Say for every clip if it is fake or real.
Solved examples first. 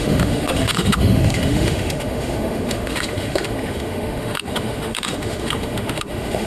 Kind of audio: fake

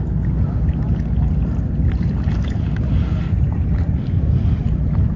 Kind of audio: real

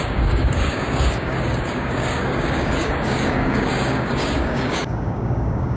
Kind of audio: fake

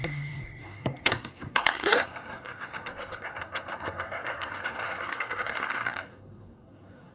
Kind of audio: fake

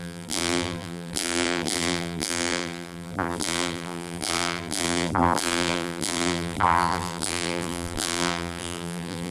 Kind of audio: fake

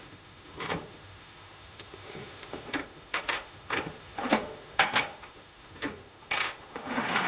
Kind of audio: fake